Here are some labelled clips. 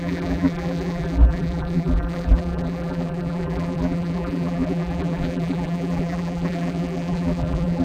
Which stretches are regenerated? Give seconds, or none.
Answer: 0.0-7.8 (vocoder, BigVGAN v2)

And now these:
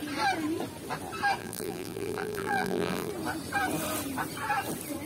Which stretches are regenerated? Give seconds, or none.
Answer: 1.4-3.1 (vocoder, BigVGAN v2)

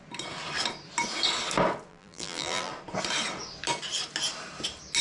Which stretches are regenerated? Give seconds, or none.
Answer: 1.9-2.7 (vocoder, BigVGAN v2)

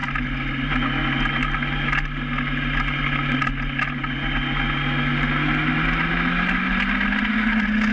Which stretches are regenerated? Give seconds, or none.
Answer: none

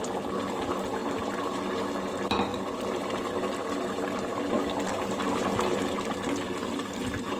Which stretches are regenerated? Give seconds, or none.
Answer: none

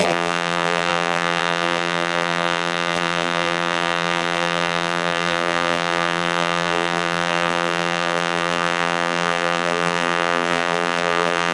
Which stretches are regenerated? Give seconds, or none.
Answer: 0.0-11.5 (vocoder, BigVGAN v2)

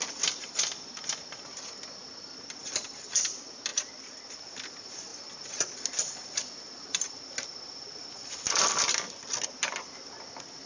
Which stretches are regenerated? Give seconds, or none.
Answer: 3.7-4.3 (vocoder, BigVGAN v2)